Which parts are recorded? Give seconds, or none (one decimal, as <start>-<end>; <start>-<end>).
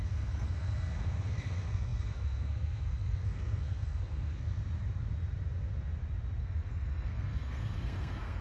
4.6-6.4